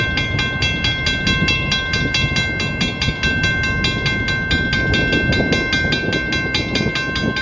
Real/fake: real